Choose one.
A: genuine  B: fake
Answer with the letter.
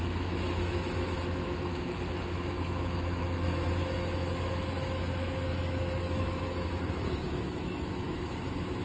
B